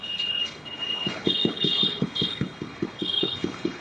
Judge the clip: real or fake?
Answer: fake